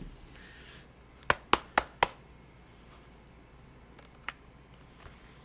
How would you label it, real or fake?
real